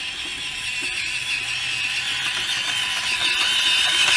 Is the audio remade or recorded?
recorded